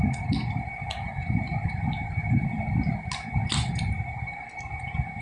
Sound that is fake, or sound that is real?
real